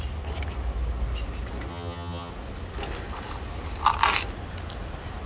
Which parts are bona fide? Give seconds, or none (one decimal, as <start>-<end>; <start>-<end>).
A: 0.0-1.7; 2.3-5.3